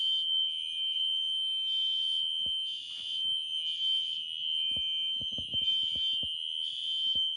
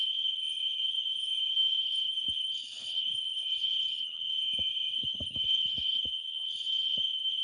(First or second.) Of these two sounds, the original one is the first